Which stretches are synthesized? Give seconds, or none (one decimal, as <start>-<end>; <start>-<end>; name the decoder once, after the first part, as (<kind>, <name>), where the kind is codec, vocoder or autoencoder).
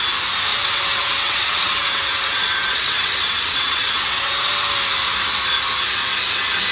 0.5-4.5 (vocoder, WaveNeXt)